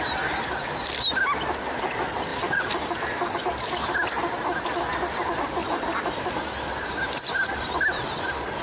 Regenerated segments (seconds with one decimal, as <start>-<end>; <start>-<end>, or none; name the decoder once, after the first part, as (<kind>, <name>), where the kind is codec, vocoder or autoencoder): 2.3-3.3 (vocoder, BigVGAN v2); 5.6-6.2